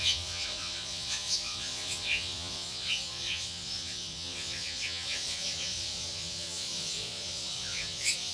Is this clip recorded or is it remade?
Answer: remade